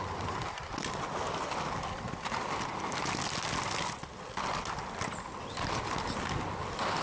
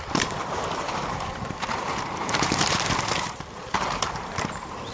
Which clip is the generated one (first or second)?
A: second